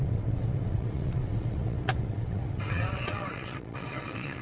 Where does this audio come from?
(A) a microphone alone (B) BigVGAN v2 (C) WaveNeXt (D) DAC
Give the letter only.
C